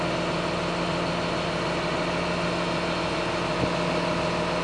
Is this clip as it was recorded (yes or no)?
yes